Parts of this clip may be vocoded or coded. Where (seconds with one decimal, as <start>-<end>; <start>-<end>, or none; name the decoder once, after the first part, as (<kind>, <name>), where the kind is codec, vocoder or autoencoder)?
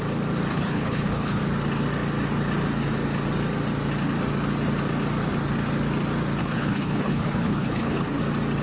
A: 0.5-1.4 (codec, HILCodec); 6.4-8.2